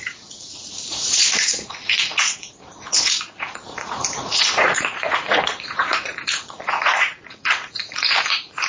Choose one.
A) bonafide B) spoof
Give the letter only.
B